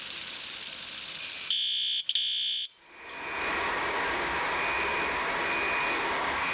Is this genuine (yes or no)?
yes